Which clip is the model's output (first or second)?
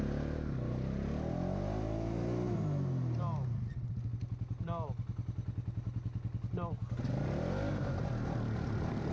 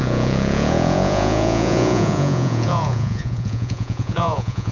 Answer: second